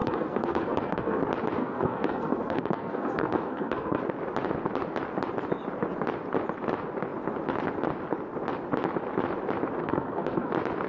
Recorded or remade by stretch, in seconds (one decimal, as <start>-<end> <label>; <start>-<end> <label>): 0.0-1.2 remade; 1.2-1.6 recorded; 1.6-4.0 remade; 4.0-9.8 recorded; 9.8-10.5 remade; 10.5-10.9 recorded